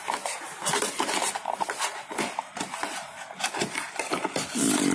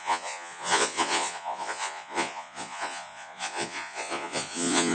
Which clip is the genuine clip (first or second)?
first